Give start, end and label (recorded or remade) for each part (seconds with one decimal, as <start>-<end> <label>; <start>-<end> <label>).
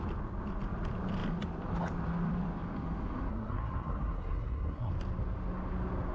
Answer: 0.0-3.3 recorded; 3.3-4.9 remade; 4.9-6.1 recorded